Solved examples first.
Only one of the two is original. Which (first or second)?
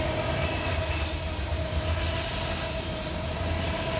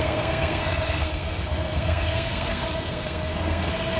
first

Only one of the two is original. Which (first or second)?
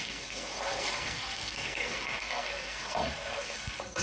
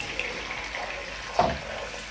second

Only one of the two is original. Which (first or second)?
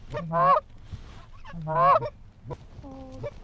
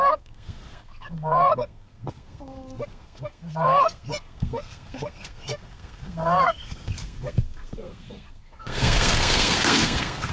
first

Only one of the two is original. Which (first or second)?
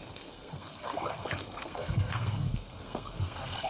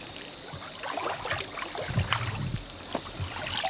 second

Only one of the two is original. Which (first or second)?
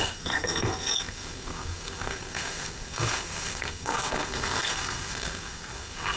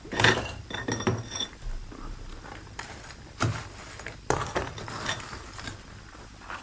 second